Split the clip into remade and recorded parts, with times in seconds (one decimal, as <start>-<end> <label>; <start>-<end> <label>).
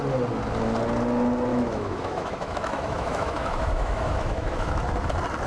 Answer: 0.0-1.5 recorded; 1.5-4.8 remade; 4.8-5.5 recorded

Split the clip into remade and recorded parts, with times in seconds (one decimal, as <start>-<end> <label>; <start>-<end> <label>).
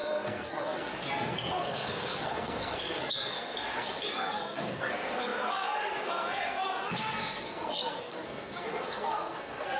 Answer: 0.0-9.8 remade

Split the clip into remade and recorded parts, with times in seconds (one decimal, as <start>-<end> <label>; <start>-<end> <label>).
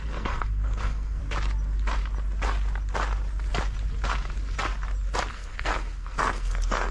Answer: 0.0-1.2 remade; 1.2-5.3 recorded; 5.3-6.9 remade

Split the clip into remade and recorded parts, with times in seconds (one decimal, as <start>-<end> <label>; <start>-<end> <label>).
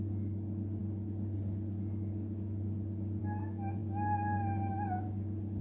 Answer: 0.0-5.6 recorded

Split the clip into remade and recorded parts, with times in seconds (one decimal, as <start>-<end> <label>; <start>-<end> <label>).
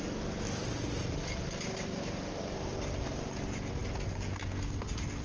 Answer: 0.0-0.6 recorded; 0.6-3.2 remade; 3.2-5.2 recorded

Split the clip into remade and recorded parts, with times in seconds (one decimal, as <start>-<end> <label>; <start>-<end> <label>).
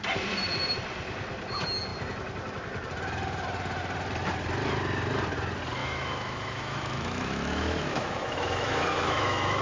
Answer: 0.0-5.8 recorded; 5.8-9.6 remade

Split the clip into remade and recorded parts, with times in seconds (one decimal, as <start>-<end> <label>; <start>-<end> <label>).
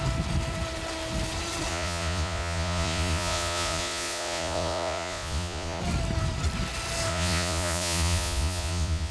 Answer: 0.0-1.7 recorded; 1.7-5.8 remade; 5.8-7.1 recorded; 7.1-9.1 remade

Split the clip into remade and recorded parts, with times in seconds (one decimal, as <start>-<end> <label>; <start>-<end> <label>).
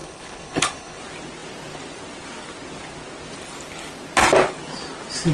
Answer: 0.0-1.0 remade; 1.0-5.3 recorded